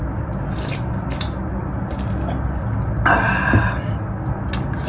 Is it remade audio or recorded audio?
recorded